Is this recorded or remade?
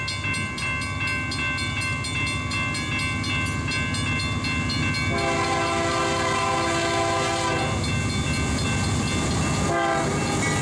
recorded